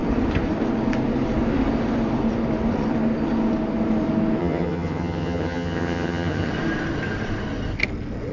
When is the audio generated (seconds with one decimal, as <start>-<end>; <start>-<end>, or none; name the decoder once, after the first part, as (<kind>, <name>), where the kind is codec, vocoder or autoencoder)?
4.4-6.5 (vocoder, HiFi-GAN)